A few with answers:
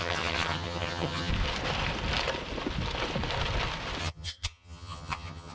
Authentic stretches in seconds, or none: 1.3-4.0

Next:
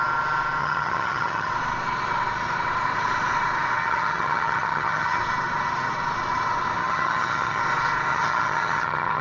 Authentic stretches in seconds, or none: 0.0-0.6; 1.5-3.8; 5.2-6.8; 7.6-8.1

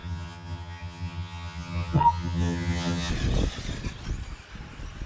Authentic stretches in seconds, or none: 3.1-5.1

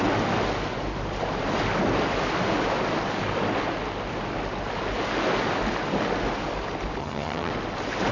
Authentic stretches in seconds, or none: 0.0-7.0; 7.5-8.1

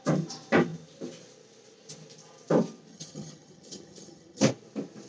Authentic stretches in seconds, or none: 0.0-2.9; 4.4-5.1

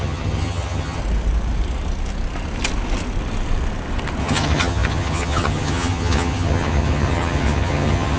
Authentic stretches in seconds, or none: 1.0-4.2

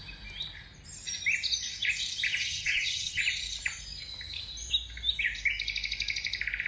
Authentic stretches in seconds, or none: 0.0-2.4; 3.2-6.7

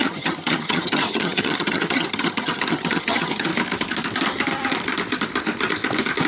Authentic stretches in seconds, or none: 3.5-6.3